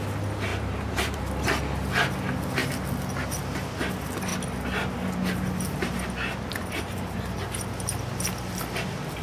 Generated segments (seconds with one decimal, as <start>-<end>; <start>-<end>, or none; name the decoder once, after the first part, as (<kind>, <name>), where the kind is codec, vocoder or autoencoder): 0.5-1.2 (vocoder, BigVGAN v2)